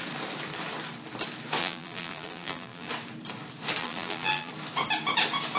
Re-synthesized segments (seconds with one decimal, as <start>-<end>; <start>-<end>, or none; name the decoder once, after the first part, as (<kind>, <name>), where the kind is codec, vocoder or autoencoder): 1.6-2.9 (vocoder, BigVGAN v2); 3.8-4.5